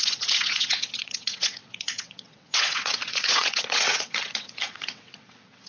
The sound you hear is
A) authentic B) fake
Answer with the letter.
B